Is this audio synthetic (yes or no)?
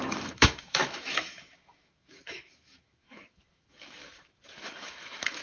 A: yes